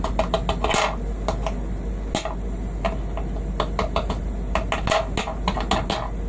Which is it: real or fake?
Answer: real